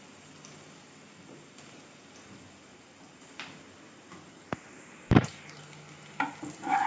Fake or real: real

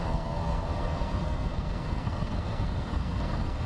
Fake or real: fake